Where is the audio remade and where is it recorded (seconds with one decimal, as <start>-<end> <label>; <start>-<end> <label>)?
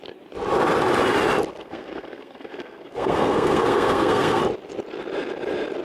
0.0-1.5 recorded; 1.5-4.4 remade; 4.4-5.8 recorded